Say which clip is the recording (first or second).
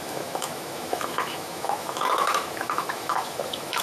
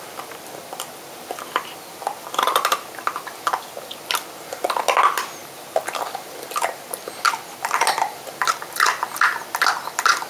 second